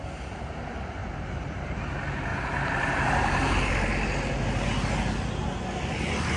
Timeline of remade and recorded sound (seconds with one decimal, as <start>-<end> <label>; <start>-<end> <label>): 0.0-1.0 recorded; 1.0-1.8 remade; 1.8-2.3 recorded; 2.3-3.7 remade; 3.7-6.4 recorded